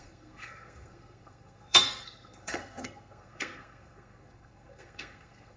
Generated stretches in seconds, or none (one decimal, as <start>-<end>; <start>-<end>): 0.0-5.6